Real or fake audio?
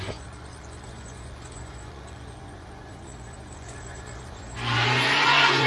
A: fake